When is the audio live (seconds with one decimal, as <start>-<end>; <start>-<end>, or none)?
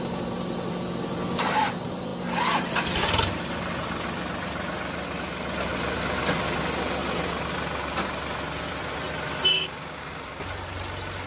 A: 0.0-9.5; 10.4-11.3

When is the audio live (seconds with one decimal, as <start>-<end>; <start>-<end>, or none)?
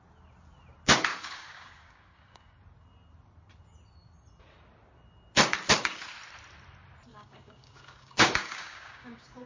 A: 0.0-1.1; 2.6-7.1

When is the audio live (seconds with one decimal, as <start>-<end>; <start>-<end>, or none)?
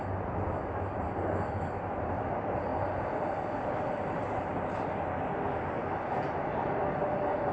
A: 0.0-7.5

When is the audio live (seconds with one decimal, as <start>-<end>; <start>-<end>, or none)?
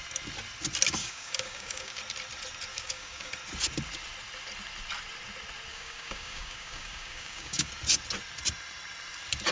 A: 0.0-1.0; 2.0-2.7; 3.3-5.7; 7.7-9.5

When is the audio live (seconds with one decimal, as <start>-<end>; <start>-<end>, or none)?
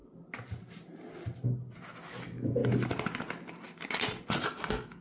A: 0.0-2.0; 2.6-4.4